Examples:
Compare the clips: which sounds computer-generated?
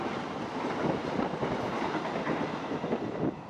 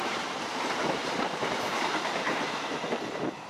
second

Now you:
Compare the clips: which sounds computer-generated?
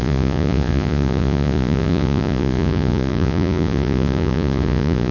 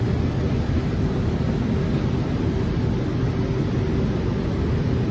first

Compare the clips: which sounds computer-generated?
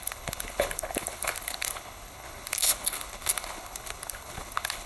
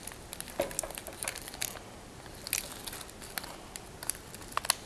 first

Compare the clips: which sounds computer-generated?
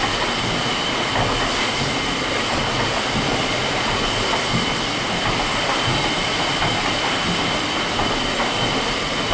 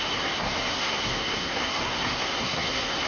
second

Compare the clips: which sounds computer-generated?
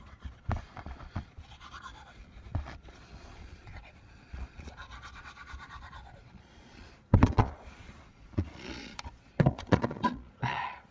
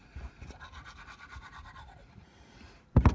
first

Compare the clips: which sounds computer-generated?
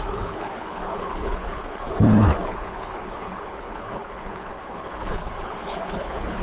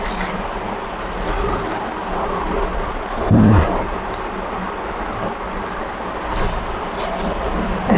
first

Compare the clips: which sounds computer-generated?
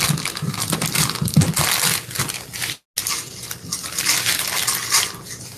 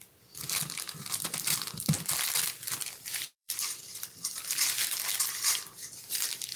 second